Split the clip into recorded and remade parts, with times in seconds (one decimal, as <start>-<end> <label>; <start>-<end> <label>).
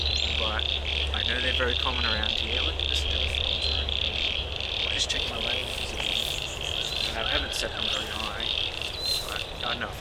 0.0-5.6 remade; 5.6-7.5 recorded; 7.5-10.0 remade